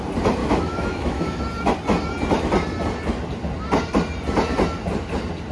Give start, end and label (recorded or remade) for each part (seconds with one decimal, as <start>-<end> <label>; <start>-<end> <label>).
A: 0.0-0.4 recorded; 0.4-1.4 remade; 1.4-5.5 recorded